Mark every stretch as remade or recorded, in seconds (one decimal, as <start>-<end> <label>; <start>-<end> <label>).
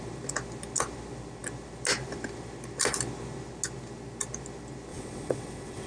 0.0-4.9 recorded; 4.9-5.9 remade